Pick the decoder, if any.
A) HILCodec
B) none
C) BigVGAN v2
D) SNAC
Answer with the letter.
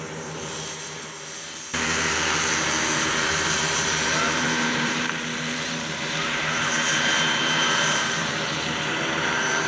C